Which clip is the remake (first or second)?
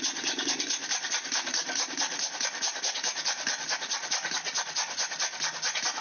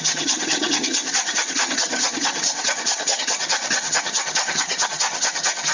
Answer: second